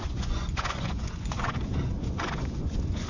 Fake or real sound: fake